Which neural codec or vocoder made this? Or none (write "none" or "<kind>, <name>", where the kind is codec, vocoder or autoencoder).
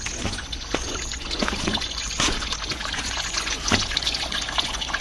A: vocoder, Vocos